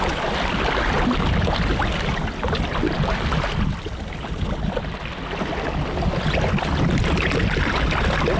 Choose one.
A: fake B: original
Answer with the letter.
B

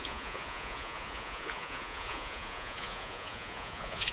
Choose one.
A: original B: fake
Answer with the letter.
B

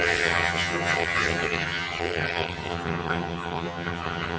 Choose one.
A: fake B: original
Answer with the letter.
A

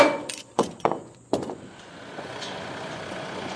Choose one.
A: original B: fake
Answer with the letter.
B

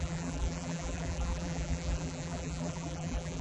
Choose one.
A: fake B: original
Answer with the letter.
A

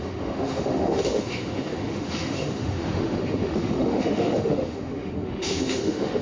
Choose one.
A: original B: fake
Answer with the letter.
B